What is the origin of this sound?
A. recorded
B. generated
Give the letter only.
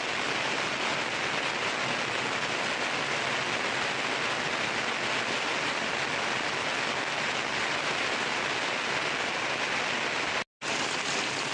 A